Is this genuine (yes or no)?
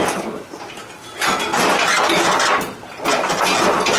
yes